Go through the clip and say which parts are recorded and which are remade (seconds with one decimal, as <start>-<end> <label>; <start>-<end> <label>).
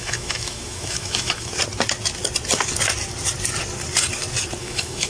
0.0-1.5 remade; 1.5-4.6 recorded; 4.6-5.1 remade